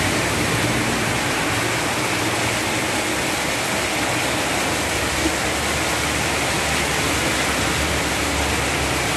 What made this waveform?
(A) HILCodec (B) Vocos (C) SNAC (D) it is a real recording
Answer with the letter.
D